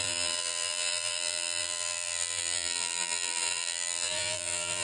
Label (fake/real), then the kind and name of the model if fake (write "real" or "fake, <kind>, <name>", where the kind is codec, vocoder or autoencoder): fake, vocoder, BigVGAN v2